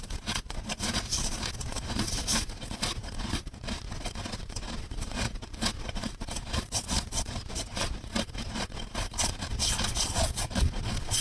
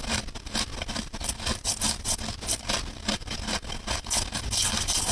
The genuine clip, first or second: second